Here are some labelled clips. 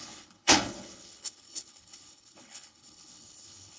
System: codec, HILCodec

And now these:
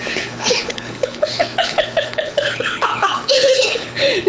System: codec, HILCodec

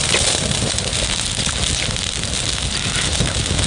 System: none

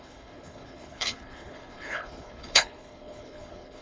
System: codec, HILCodec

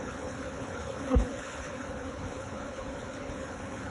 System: codec, HILCodec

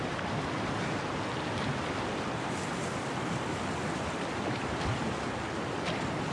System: none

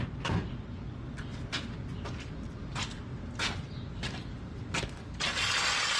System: none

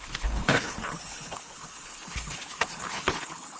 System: codec, HILCodec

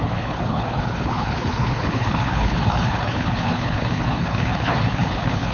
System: codec, HILCodec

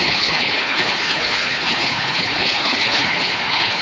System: codec, HILCodec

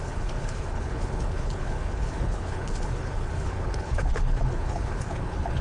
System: codec, HILCodec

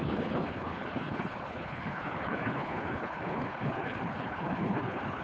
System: codec, HILCodec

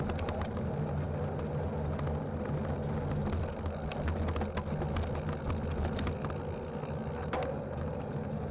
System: none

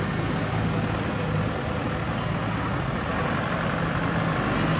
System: none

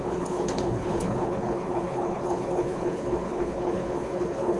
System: codec, HILCodec